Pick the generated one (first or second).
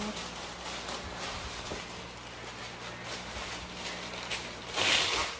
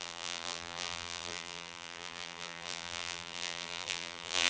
second